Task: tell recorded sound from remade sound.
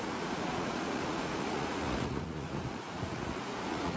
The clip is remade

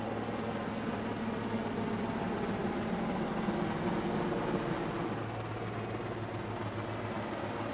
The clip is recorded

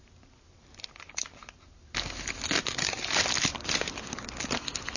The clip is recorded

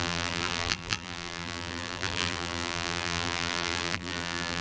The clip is remade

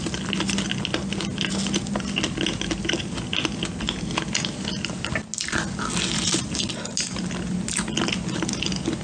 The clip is recorded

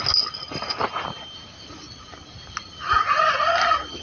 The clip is recorded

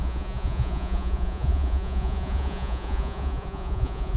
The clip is remade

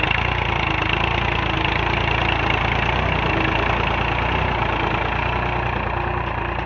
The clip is recorded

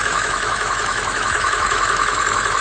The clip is remade